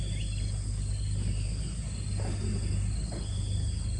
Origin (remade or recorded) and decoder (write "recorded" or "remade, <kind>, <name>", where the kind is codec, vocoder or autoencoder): recorded